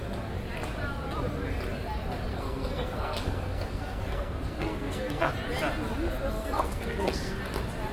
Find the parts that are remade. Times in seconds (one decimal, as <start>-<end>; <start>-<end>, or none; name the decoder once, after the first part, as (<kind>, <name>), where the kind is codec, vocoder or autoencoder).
2.3-5.3 (codec, SNAC); 6.4-7.4